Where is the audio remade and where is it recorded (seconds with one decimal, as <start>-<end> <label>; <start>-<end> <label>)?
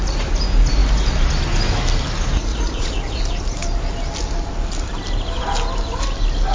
0.0-2.5 recorded; 2.5-3.2 remade; 3.2-6.5 recorded